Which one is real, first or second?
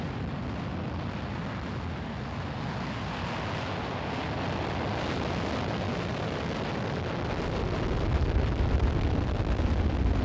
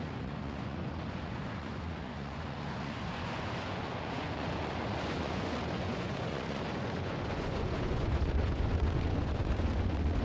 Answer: first